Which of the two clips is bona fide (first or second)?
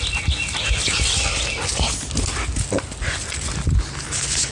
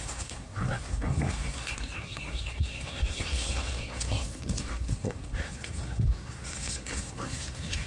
first